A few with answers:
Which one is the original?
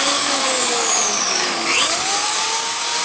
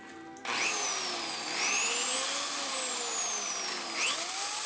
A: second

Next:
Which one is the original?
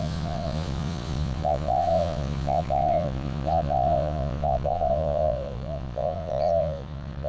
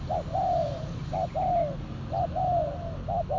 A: second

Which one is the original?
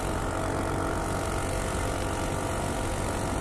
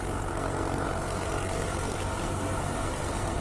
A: first